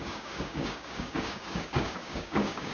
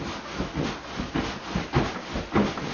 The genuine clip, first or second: second